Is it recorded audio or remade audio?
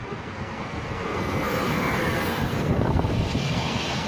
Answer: remade